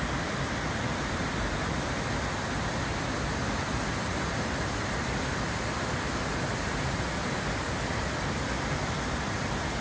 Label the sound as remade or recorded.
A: recorded